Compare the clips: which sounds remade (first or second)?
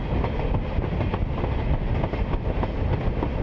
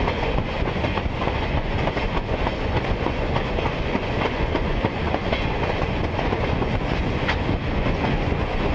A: second